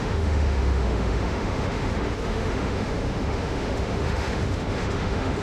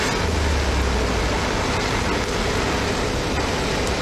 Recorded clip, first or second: second